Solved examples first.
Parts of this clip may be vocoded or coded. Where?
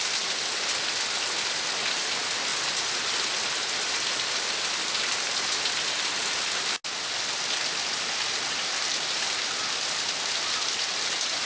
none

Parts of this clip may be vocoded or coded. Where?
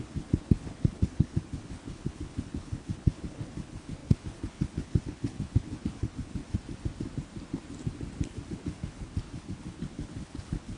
0.0-6.4 (codec, HILCodec); 8.5-10.8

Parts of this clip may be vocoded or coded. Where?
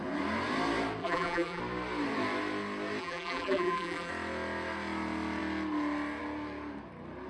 1.0-1.6 (vocoder, BigVGAN v2); 3.0-4.1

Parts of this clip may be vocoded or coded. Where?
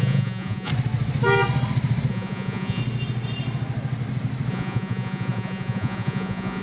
0.0-0.7 (vocoder, Vocos); 2.1-2.8; 4.5-6.6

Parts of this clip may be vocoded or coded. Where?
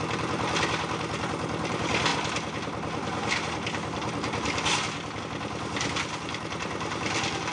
none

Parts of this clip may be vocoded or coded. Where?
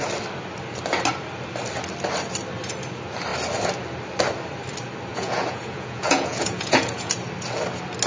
5.1-7.1 (vocoder, Vocos)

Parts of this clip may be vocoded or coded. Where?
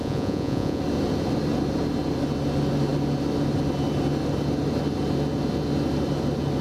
0.0-0.8 (vocoder, Vocos)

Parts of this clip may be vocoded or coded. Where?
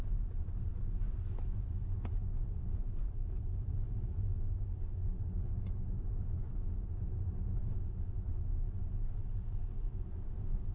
none